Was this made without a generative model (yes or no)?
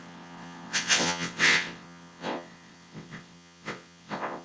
no